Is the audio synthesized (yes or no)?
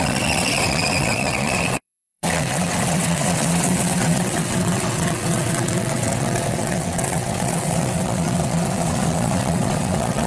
yes